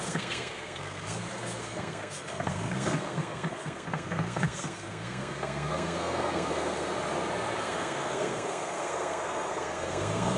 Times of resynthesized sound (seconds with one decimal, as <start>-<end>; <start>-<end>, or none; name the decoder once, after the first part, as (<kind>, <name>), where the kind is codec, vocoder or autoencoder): 0.0-6.9 (codec, SNAC); 7.6-10.4